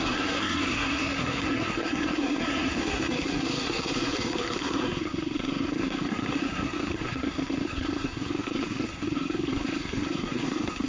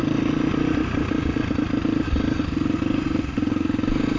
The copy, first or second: first